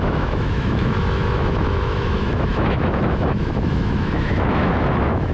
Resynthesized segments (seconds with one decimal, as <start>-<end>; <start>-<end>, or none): 0.0-5.3